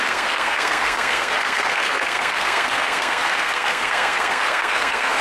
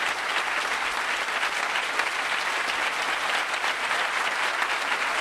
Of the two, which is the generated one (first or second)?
first